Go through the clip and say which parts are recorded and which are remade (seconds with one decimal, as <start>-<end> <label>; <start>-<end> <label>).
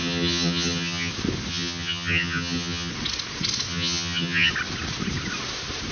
0.0-1.1 remade; 1.1-1.5 recorded; 1.5-2.9 remade; 2.9-3.7 recorded; 3.7-4.5 remade; 4.5-5.9 recorded